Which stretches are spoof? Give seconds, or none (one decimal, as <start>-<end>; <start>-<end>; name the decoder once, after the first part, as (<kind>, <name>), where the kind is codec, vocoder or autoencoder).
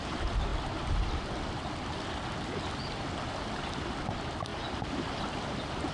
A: 0.0-5.9 (vocoder, BigVGAN v2)